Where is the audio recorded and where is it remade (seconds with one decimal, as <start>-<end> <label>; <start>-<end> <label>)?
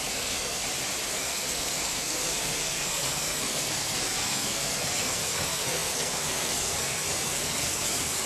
0.0-0.6 remade; 0.6-1.1 recorded; 1.1-8.3 remade